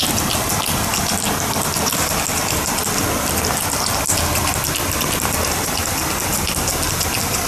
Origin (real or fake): real